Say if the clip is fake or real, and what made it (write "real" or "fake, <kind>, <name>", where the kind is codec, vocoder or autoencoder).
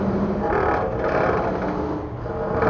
real